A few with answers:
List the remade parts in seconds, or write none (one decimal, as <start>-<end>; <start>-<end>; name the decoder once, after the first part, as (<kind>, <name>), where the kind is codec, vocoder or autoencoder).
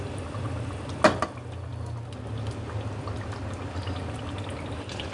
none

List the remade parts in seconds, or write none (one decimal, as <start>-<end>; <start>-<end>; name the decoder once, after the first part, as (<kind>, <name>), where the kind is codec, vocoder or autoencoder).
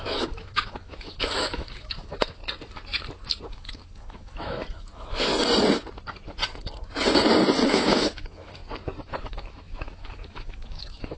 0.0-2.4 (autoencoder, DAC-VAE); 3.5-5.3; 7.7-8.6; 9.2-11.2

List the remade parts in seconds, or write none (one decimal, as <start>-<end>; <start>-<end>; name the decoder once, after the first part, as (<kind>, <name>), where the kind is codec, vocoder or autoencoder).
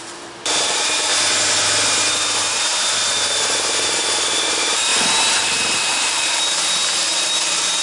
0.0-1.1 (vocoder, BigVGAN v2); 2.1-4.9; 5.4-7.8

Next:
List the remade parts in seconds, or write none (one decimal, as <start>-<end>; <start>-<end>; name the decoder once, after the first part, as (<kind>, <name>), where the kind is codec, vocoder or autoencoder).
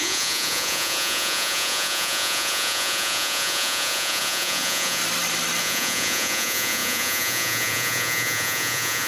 0.0-5.0 (vocoder, Vocos); 5.6-9.1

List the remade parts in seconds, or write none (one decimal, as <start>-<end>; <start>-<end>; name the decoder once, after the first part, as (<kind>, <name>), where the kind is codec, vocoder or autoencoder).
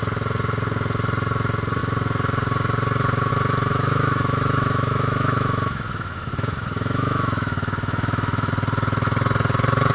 3.7-8.5 (autoencoder, DAC-VAE)